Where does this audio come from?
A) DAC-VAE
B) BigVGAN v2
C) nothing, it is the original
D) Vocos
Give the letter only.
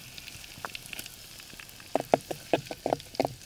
C